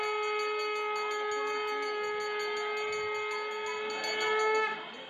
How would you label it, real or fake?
real